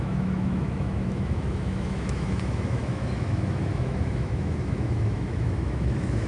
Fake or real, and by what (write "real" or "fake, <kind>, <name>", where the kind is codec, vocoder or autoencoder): fake, autoencoder, DAC-VAE